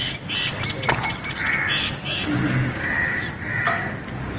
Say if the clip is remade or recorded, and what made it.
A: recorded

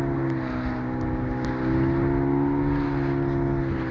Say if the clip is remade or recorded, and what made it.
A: recorded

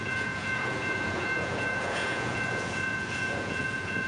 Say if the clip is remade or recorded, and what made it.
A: remade, vocoder, Vocos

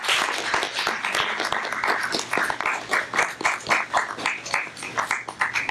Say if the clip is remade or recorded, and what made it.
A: recorded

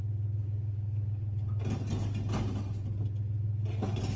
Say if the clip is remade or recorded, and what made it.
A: recorded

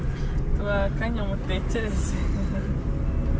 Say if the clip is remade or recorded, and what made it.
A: recorded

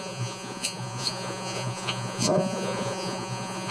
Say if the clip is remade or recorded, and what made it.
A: remade, vocoder, Vocos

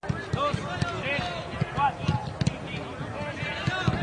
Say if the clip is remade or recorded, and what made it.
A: recorded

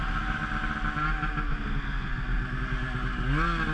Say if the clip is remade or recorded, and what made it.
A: recorded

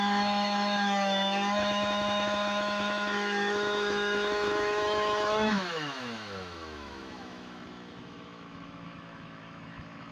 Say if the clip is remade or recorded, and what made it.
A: remade, autoencoder, DAC-VAE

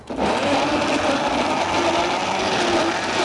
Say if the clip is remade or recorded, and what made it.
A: recorded